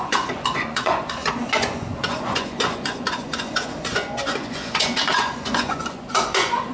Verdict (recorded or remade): remade